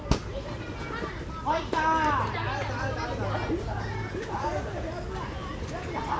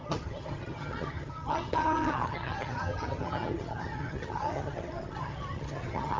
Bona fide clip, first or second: first